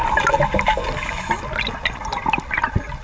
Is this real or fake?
real